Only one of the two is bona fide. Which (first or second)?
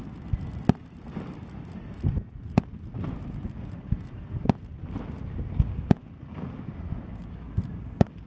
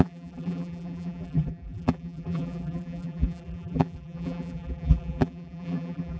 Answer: first